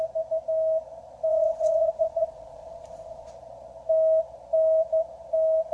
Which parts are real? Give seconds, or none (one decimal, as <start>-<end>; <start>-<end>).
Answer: 0.0-1.3; 3.3-5.7